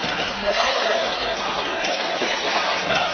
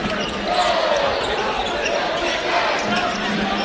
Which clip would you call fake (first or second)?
first